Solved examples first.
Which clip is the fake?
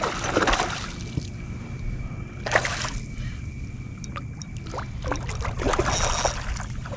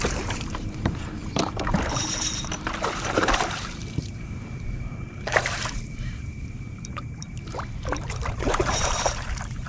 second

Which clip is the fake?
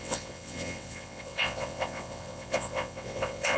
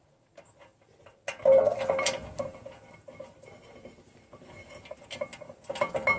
first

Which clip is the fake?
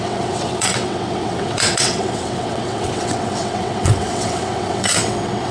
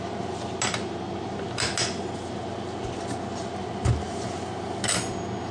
first